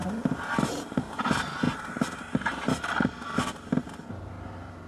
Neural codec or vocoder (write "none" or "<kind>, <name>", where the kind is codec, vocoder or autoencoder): none